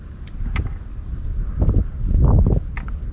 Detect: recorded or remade recorded